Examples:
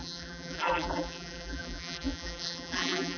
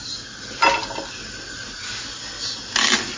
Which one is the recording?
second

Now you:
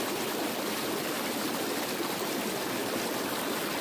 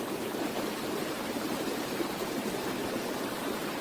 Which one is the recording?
first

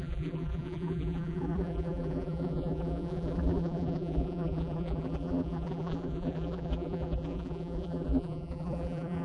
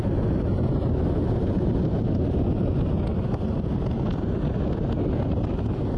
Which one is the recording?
second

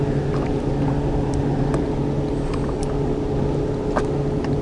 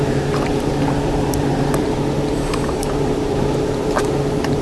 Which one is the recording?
first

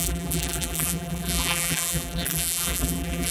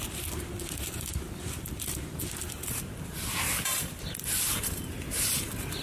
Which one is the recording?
second